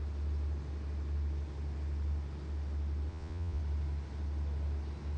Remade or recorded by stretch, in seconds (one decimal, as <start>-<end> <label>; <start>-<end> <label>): 0.0-3.1 recorded; 3.1-3.6 remade; 3.6-5.2 recorded